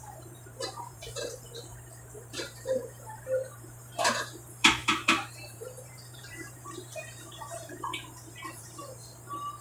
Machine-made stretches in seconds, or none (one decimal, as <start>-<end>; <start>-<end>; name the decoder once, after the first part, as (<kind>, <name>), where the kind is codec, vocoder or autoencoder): 0.0-1.7 (vocoder, BigVGAN v2); 2.3-8.8